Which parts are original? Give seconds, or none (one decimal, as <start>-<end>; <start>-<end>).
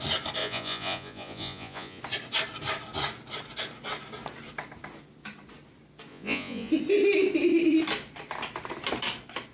0.0-0.4; 2.0-6.1; 6.7-9.5